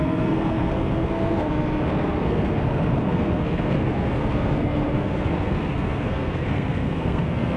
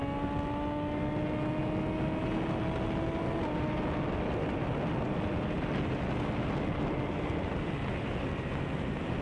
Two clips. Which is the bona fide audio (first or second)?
second